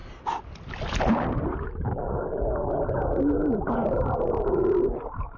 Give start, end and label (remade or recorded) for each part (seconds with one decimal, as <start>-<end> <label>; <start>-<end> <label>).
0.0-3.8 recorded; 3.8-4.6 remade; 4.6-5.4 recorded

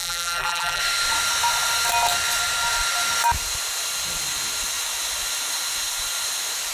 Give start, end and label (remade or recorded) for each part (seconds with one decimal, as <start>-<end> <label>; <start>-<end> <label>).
0.0-0.8 remade; 0.8-6.7 recorded

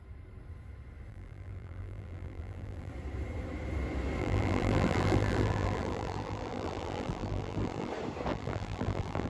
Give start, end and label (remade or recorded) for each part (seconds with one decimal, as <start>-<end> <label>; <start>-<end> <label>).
0.0-1.1 recorded; 1.1-2.9 remade; 2.9-4.2 recorded; 4.2-7.9 remade; 7.9-8.3 recorded; 8.3-9.3 remade

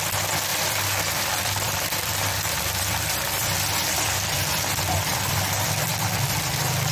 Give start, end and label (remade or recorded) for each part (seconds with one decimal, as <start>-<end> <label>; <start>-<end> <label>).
0.0-0.5 recorded; 0.5-4.6 remade; 4.6-5.1 recorded; 5.1-5.9 remade; 5.9-6.9 recorded

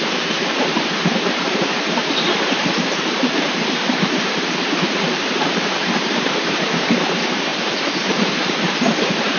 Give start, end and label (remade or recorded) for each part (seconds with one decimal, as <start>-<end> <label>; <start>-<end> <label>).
0.0-9.4 remade